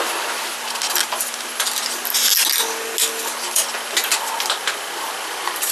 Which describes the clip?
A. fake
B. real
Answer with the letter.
B